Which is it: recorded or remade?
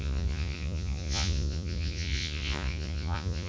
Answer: remade